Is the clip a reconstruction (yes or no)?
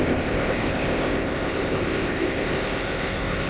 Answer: yes